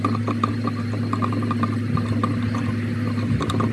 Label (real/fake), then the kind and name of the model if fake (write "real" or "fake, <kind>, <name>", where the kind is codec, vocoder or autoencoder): real